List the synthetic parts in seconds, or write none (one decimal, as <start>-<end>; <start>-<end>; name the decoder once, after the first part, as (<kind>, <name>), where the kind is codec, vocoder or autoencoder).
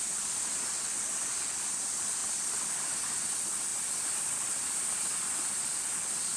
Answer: none